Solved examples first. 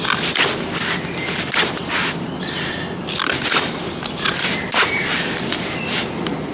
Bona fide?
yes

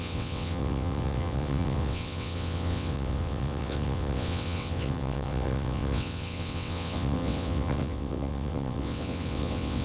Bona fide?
no